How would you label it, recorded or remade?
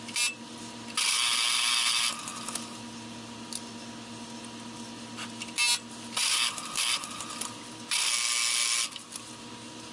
recorded